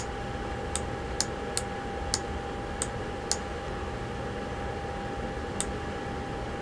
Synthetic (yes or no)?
no